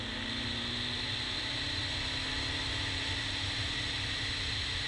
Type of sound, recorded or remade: recorded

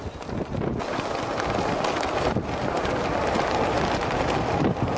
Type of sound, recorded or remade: recorded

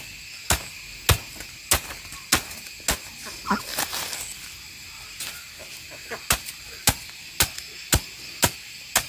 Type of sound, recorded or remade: recorded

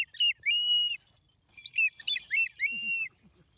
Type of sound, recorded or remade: recorded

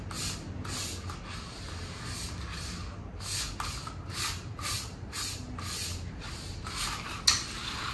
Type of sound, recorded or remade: recorded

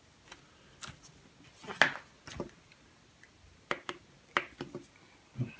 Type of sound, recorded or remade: recorded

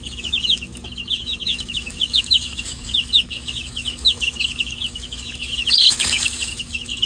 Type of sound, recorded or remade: remade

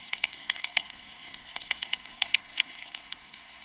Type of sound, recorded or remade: remade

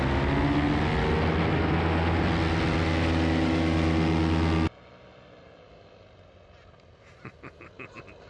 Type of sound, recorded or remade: recorded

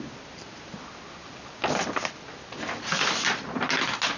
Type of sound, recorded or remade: recorded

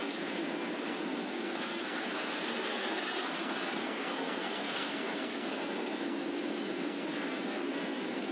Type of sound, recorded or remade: remade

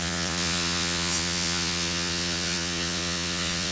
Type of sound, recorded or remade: remade